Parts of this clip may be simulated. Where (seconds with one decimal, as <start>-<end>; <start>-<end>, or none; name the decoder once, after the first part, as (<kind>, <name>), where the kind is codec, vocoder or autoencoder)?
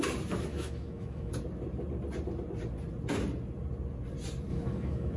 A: 0.5-1.3 (autoencoder, DAC-VAE); 4.5-5.2